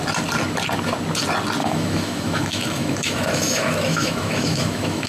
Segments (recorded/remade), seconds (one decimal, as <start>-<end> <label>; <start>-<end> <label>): 0.0-1.6 recorded; 1.6-5.1 remade